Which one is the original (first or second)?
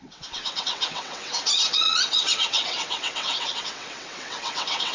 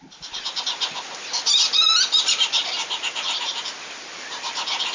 second